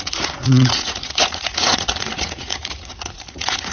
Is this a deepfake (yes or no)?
yes